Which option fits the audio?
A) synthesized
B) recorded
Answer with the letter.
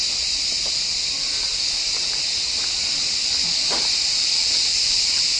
B